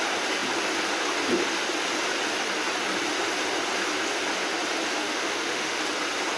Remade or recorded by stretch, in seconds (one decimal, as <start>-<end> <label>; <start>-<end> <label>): 0.0-5.0 recorded; 5.0-5.8 remade; 5.8-6.4 recorded